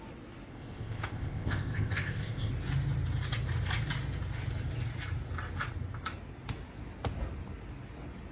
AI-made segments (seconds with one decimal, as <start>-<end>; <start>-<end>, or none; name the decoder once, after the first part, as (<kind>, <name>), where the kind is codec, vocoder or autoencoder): 0.5-2.5 (codec, ZipCodec)